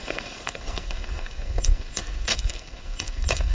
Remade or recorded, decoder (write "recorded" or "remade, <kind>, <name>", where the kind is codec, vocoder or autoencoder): remade, codec, SNAC